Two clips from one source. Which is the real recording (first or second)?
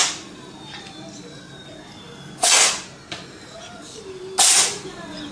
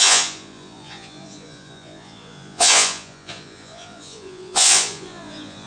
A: first